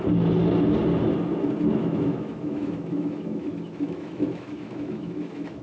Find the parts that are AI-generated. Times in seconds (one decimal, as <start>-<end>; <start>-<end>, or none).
1.8-5.6